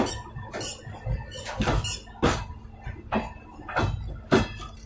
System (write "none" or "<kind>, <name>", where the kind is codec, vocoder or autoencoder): none